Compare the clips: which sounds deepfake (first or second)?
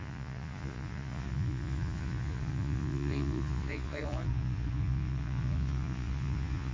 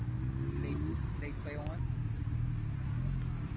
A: first